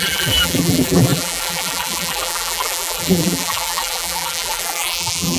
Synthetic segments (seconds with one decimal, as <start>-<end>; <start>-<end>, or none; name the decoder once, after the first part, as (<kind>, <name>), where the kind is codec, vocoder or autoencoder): 0.0-5.4 (vocoder, BigVGAN v2)